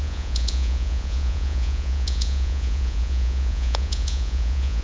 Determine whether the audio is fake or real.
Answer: fake